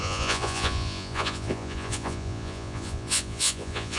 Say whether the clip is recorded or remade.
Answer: remade